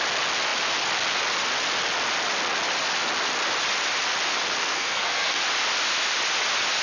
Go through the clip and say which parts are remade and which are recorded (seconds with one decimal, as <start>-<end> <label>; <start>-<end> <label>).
0.0-4.6 recorded; 4.6-5.4 remade; 5.4-6.8 recorded